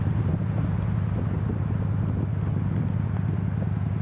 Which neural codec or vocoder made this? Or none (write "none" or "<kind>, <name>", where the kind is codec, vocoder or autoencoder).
none